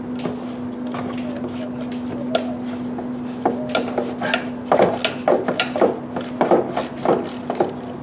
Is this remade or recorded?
recorded